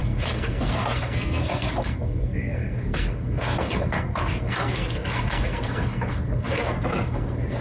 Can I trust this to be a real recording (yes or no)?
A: no